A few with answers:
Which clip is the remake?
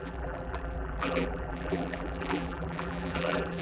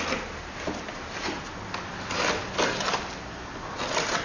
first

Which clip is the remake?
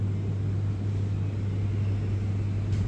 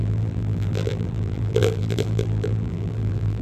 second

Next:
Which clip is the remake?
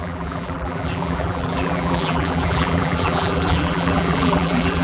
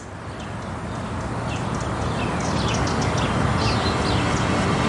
first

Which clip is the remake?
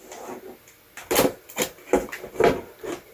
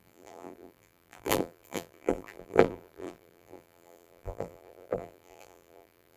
second